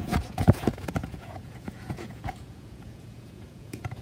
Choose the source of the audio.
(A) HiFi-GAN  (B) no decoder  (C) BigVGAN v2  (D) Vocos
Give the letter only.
D